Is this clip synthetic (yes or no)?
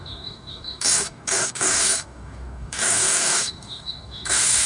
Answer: yes